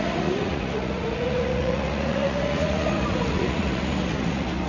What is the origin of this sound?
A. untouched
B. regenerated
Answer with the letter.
B